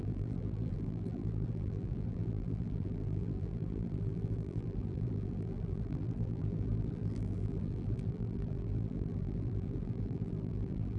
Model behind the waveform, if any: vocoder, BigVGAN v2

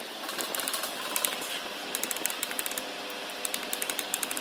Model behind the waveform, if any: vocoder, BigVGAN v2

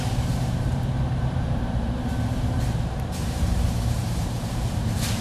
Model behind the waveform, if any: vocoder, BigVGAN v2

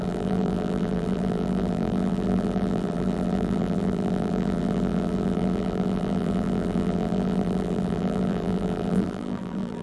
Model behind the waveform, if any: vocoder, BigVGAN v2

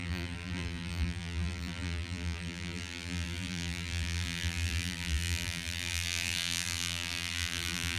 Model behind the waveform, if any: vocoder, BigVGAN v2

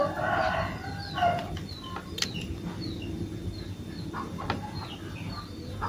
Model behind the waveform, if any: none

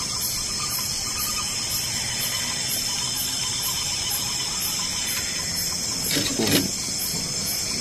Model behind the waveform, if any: none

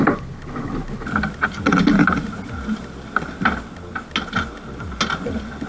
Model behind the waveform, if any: none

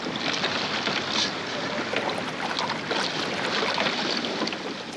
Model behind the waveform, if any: none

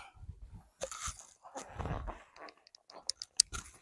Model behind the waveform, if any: none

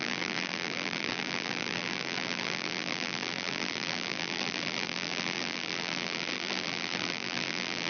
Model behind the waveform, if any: vocoder, BigVGAN v2